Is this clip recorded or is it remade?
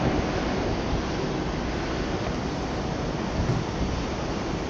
recorded